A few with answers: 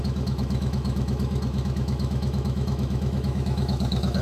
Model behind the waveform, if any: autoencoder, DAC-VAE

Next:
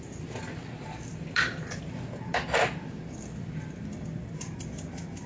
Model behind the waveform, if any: none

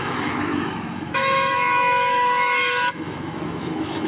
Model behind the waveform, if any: autoencoder, DAC-VAE